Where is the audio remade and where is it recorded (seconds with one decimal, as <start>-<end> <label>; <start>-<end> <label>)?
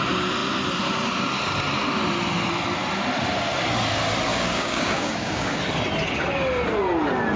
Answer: 0.0-4.3 recorded; 4.3-5.6 remade; 5.6-7.4 recorded